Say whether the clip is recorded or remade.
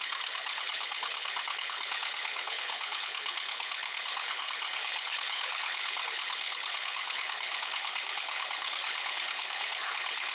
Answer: remade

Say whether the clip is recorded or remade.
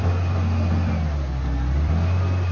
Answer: recorded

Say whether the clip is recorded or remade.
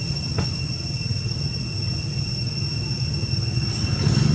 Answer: recorded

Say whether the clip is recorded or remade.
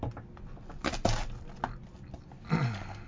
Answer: recorded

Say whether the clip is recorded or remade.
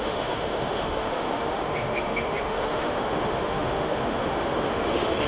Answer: remade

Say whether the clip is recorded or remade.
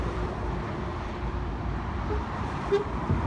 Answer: remade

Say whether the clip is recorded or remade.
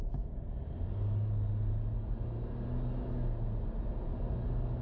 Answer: recorded